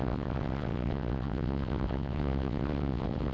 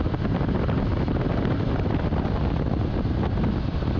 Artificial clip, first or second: first